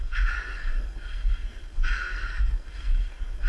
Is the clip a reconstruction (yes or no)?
yes